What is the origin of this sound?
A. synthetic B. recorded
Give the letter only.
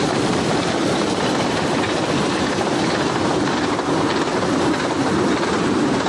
A